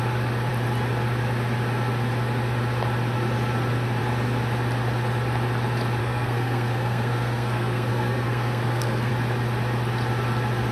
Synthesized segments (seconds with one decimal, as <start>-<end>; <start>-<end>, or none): 6.0-9.1